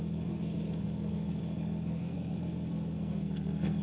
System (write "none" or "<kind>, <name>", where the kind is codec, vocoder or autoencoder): codec, SNAC